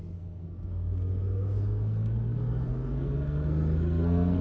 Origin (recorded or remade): remade